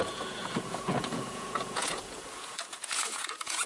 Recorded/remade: remade